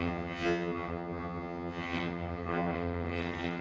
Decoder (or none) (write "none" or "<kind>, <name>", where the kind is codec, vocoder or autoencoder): vocoder, HiFi-GAN